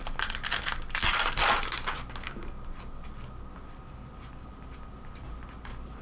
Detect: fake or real real